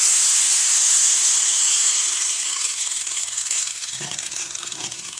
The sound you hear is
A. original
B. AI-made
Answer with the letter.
B